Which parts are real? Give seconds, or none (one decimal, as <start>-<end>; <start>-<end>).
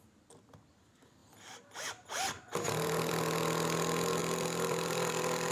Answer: 0.0-4.2